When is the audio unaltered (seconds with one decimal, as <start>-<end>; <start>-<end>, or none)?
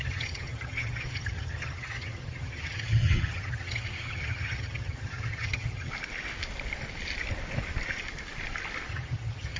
5.9-8.9